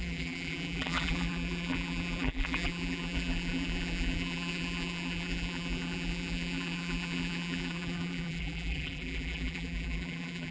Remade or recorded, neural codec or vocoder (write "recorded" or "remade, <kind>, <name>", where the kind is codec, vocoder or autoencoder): remade, vocoder, BigVGAN v2